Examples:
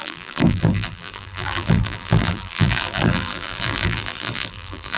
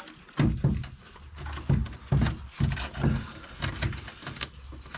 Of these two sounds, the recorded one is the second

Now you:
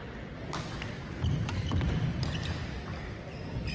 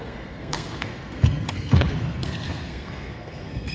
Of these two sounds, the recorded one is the first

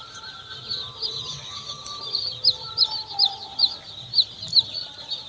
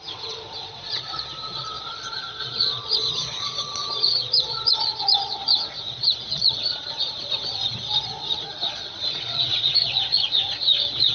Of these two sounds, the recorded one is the first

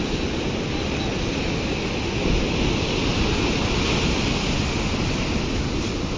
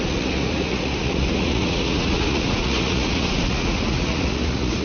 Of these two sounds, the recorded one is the first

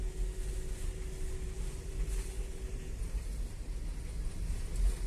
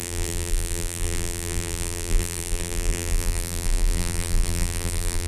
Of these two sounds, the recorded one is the first